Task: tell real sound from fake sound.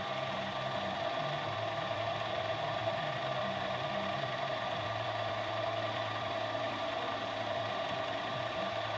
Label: fake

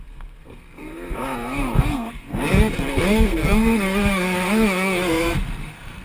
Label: fake